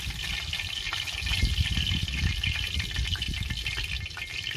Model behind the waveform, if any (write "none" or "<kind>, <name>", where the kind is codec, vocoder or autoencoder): none